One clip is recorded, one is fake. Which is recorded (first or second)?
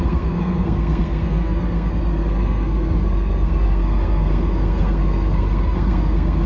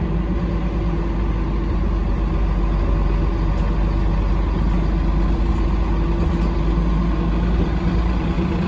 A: second